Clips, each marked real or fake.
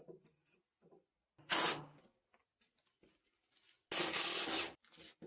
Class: real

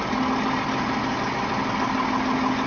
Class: real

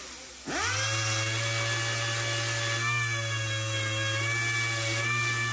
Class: real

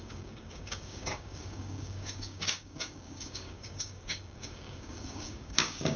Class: fake